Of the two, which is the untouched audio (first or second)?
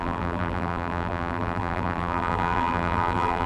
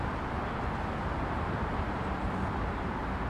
second